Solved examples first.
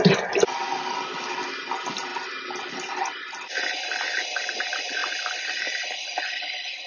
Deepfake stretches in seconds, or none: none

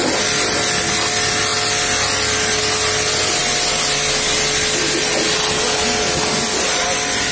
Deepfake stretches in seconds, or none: none

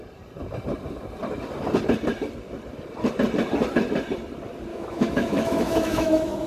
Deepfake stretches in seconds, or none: 4.7-6.5 (autoencoder, DAC-VAE)

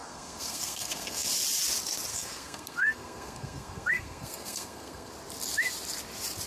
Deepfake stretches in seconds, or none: 0.0-1.3 (codec, SNAC); 2.1-5.1

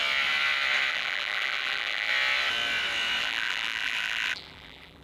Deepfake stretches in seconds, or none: 0.9-2.1 (vocoder, BigVGAN v2); 3.2-5.0